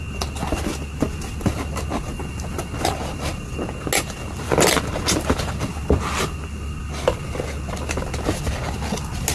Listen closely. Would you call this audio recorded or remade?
recorded